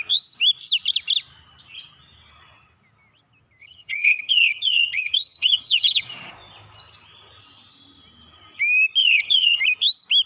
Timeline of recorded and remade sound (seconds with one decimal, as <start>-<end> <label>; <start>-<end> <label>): 0.0-3.6 recorded; 3.6-6.3 remade; 6.3-9.0 recorded; 9.0-9.6 remade; 9.6-10.3 recorded